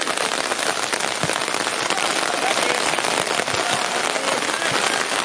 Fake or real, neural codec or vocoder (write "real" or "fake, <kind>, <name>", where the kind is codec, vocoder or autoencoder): real